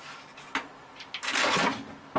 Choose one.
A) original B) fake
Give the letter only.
A